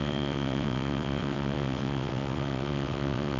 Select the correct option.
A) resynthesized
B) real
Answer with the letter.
A